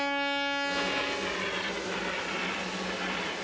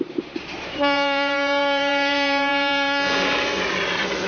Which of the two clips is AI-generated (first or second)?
second